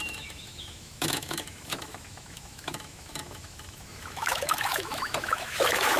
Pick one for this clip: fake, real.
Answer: fake